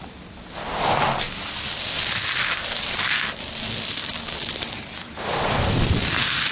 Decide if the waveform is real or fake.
real